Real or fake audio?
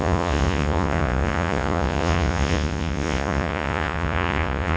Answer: fake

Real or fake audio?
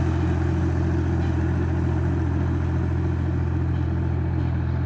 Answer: real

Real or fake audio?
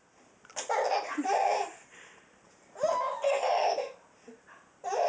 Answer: real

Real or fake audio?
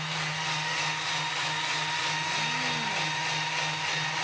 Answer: real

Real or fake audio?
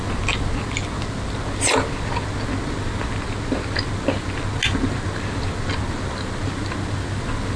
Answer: real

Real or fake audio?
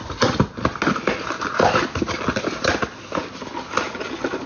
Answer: real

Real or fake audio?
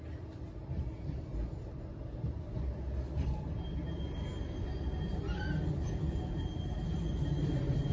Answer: real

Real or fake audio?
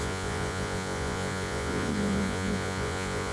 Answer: fake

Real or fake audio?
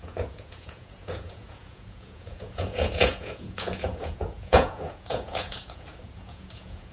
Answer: fake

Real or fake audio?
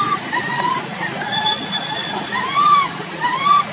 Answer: fake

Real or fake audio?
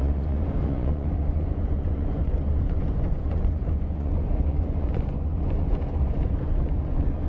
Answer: fake